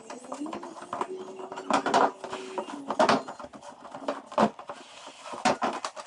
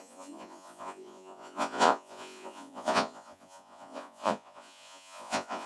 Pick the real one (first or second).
first